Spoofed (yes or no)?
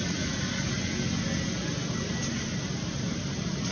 no